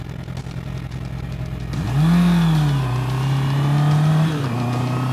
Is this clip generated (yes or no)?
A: no